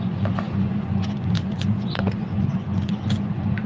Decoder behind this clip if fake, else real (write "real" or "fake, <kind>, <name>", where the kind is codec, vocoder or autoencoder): fake, vocoder, Vocos